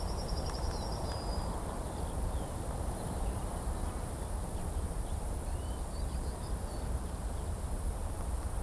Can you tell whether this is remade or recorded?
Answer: remade